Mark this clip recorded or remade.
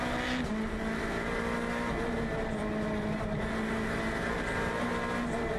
recorded